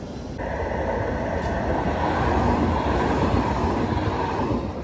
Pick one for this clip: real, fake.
real